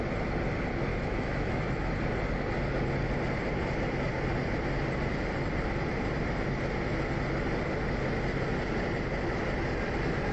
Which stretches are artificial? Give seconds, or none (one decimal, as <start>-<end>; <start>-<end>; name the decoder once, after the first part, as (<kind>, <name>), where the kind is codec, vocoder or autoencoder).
0.9-1.9 (autoencoder, DAC-VAE)